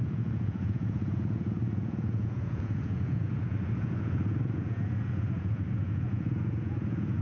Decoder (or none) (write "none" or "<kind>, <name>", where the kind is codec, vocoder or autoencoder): vocoder, Vocos